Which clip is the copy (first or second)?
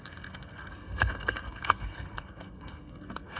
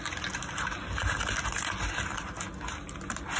first